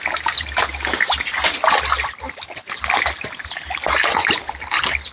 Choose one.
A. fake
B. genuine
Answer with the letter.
B